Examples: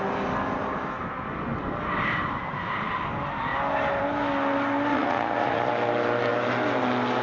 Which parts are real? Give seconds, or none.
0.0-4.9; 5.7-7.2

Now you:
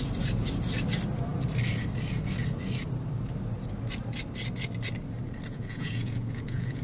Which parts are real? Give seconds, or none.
0.0-5.5

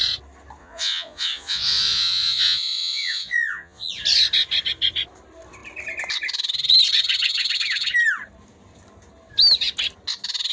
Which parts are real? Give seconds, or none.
0.0-0.6; 3.9-10.5

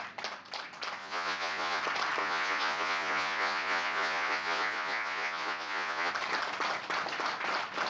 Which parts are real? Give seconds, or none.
0.0-1.0; 1.8-2.2; 6.1-7.9

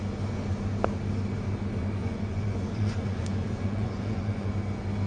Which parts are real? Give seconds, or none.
0.0-2.0; 4.5-5.1

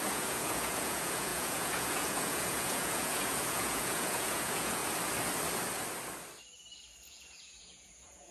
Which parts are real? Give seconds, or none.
4.8-7.0

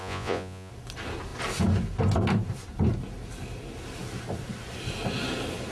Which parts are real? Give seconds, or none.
0.7-5.7

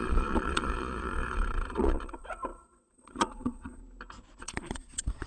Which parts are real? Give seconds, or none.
3.8-4.4